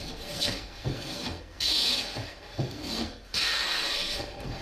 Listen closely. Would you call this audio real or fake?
fake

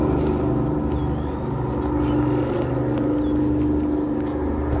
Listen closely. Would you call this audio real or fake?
real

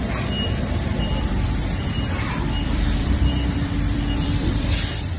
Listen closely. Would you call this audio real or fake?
fake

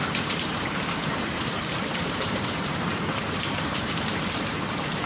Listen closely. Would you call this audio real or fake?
fake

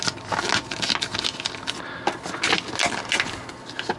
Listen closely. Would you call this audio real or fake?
real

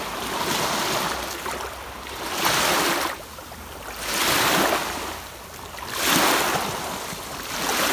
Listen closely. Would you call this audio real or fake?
real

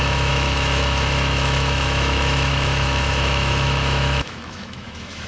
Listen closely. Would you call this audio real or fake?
fake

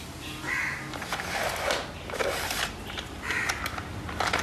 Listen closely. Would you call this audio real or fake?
real